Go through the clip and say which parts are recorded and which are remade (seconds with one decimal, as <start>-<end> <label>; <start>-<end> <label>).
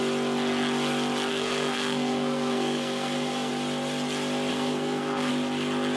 0.0-1.3 recorded; 1.3-3.5 remade; 3.5-4.5 recorded; 4.5-5.3 remade; 5.3-6.0 recorded